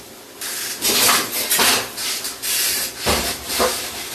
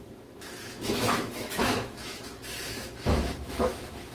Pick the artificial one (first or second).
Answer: second